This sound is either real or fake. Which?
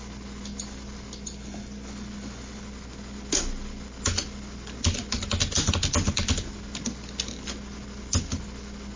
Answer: real